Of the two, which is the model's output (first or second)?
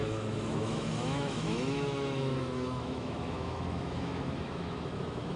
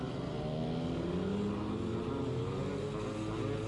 first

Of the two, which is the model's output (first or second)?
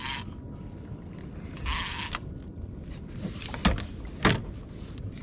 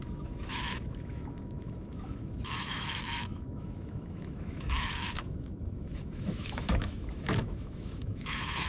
second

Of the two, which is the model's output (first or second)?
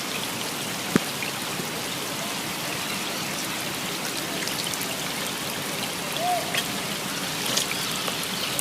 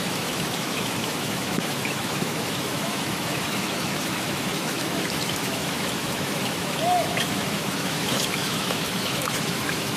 second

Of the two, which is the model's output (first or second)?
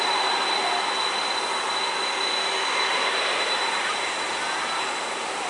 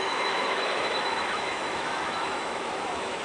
second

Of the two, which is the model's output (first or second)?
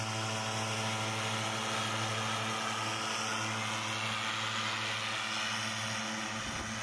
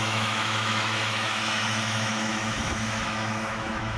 second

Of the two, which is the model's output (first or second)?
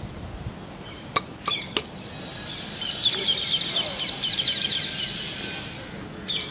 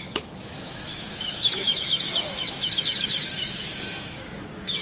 second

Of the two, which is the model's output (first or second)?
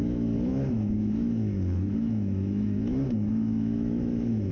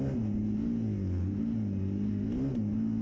first